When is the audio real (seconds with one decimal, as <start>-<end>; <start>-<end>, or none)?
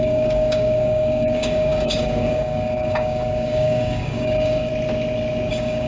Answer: 4.7-5.5